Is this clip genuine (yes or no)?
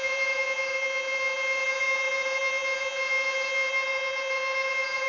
no